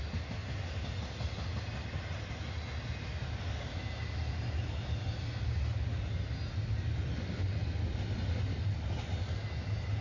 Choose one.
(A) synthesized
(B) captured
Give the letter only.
B